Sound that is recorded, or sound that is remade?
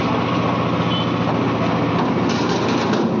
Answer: recorded